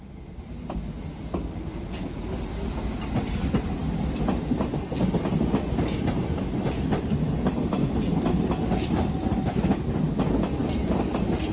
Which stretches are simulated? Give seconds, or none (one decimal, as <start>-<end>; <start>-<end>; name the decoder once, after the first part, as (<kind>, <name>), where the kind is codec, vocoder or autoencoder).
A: none